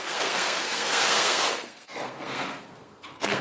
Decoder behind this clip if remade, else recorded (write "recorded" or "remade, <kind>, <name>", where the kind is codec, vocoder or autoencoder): remade, codec, SNAC